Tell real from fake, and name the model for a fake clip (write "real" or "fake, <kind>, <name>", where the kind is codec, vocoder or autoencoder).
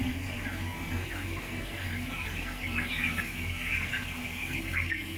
fake, codec, SNAC